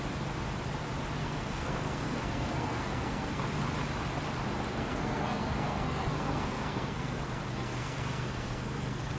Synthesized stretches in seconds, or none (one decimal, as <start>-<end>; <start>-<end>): 1.2-3.4; 4.7-9.2